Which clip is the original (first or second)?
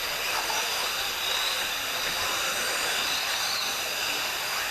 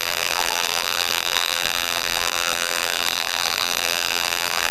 first